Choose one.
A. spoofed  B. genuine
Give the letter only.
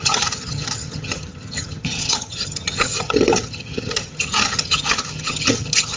A